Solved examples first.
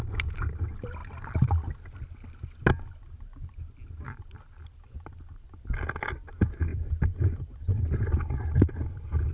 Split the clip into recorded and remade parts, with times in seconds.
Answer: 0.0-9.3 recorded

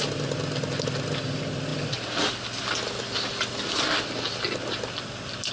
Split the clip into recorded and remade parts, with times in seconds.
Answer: 0.0-5.5 recorded

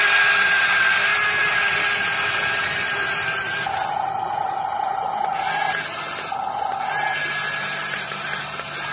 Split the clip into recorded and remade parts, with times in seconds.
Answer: 0.0-8.9 recorded

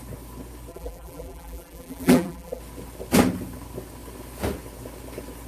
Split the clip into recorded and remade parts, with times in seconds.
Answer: 0.0-0.7 recorded; 0.7-2.6 remade; 2.6-5.5 recorded

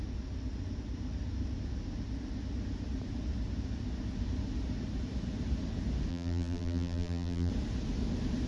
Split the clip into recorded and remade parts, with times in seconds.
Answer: 0.0-6.1 recorded; 6.1-7.5 remade; 7.5-8.5 recorded

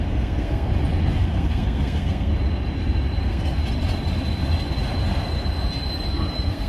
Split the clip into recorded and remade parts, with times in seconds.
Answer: 0.0-0.7 remade; 0.7-1.2 recorded; 1.2-2.3 remade; 2.3-3.2 recorded; 3.2-3.6 remade; 3.6-6.1 recorded; 6.1-6.7 remade

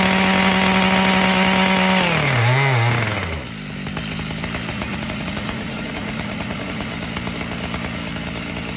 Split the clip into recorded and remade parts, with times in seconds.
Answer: 0.0-4.7 recorded; 4.7-6.9 remade; 6.9-8.8 recorded

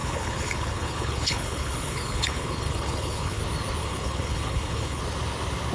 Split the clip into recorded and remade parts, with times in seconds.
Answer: 0.0-3.4 remade; 3.4-3.8 recorded; 3.8-5.0 remade; 5.0-5.7 recorded